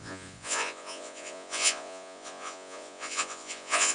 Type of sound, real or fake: fake